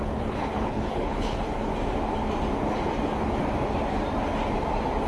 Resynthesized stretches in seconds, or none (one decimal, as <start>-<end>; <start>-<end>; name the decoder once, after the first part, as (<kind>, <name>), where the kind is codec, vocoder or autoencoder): 0.0-1.7 (codec, HILCodec)

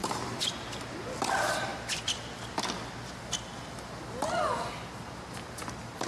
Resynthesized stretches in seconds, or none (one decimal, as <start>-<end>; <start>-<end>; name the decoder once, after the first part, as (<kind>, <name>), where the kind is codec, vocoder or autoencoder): none

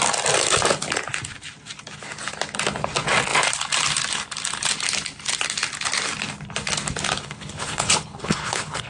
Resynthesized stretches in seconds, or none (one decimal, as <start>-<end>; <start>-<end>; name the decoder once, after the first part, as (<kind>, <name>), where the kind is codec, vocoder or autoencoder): 7.2-8.9 (codec, HILCodec)